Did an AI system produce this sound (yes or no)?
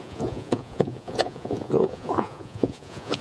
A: yes